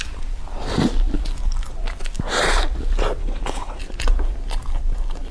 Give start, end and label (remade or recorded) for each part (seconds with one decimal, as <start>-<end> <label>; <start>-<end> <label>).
0.0-3.2 recorded; 3.2-3.8 remade; 3.8-5.3 recorded

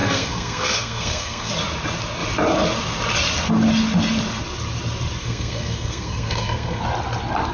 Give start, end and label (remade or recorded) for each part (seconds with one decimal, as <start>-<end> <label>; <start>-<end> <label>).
0.0-1.5 remade; 1.5-5.2 recorded; 5.2-6.8 remade; 6.8-7.5 recorded

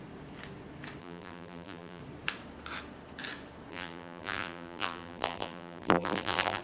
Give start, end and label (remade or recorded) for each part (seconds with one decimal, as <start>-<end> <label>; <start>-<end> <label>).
0.0-1.0 recorded; 1.0-2.0 remade; 2.0-3.7 recorded; 3.7-6.6 remade

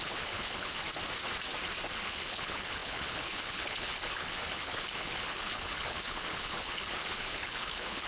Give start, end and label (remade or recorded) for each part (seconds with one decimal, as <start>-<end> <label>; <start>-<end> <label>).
0.0-0.7 remade; 0.7-1.9 recorded; 1.9-8.1 remade

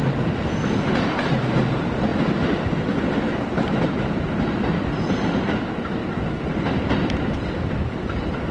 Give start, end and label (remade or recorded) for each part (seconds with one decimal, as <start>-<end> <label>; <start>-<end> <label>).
0.0-2.1 recorded; 2.1-4.2 remade; 4.2-6.0 recorded; 6.0-7.7 remade; 7.7-8.5 recorded

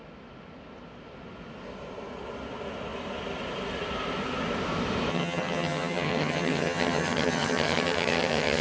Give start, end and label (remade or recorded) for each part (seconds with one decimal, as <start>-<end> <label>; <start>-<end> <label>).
0.0-5.1 recorded; 5.1-8.6 remade

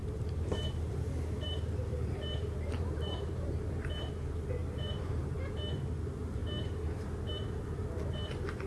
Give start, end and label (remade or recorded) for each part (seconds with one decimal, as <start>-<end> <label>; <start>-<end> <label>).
0.0-4.1 remade; 4.1-4.6 recorded; 4.6-5.5 remade; 5.5-8.7 recorded